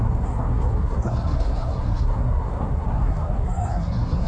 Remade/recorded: remade